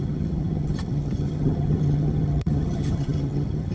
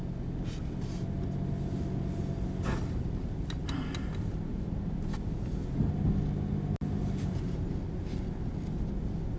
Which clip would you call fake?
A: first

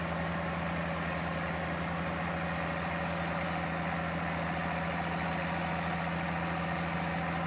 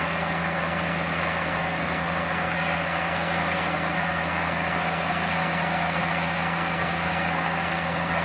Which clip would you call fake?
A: second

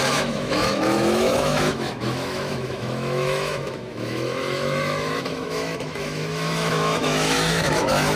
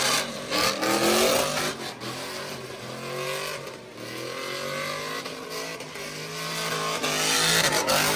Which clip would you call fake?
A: first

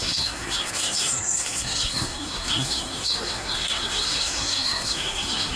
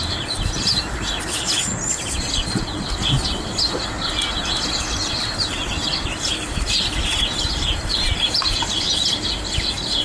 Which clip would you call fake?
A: first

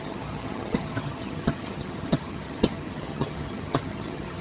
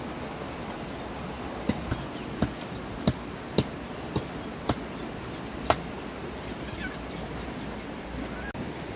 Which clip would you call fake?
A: first